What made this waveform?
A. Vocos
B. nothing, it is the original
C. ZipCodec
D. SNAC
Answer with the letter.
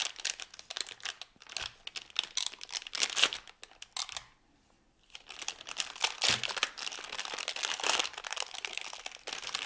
B